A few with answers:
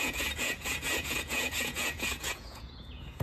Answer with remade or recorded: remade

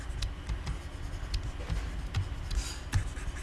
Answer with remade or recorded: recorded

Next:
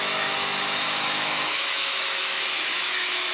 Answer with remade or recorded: remade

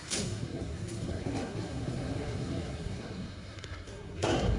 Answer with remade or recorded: remade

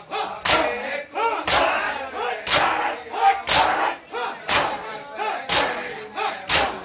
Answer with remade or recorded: recorded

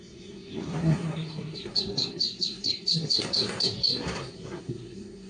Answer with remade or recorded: remade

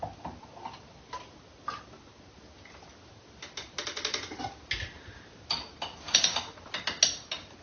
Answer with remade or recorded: recorded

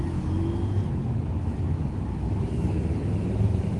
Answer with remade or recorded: remade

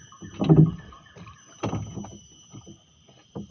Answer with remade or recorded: recorded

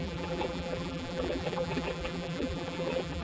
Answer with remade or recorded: remade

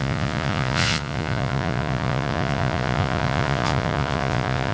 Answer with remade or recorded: remade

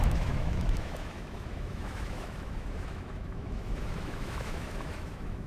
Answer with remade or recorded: remade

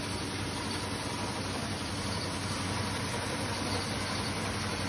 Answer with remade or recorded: remade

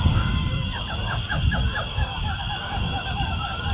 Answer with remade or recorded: remade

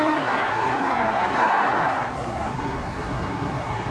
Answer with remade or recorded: remade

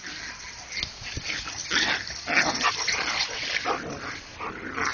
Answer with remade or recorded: recorded